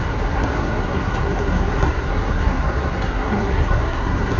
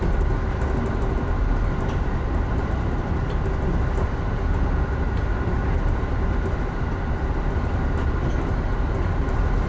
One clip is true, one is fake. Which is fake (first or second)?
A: first